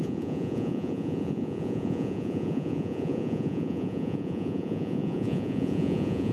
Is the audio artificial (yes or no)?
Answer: yes